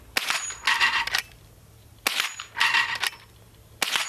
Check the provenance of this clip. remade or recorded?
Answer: recorded